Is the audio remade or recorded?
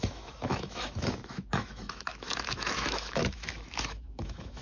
remade